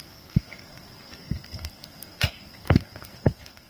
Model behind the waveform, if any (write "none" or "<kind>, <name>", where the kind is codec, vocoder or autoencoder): codec, SNAC